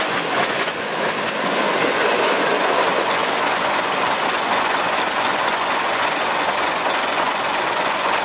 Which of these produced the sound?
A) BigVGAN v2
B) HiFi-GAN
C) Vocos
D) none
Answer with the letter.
C